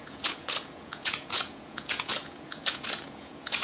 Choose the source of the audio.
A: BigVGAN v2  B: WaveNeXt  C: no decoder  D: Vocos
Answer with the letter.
D